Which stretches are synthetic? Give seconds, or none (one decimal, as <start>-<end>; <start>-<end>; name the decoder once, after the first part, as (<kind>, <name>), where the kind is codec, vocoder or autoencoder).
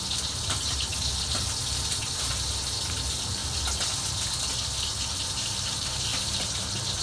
0.0-0.9 (vocoder, BigVGAN v2); 2.0-3.4; 5.0-7.0